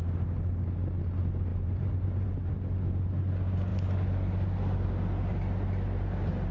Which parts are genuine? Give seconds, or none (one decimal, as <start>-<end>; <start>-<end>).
0.0-1.5; 2.5-6.5